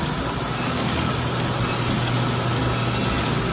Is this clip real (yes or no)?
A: yes